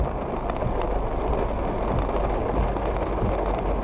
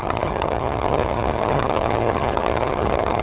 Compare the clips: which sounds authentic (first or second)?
first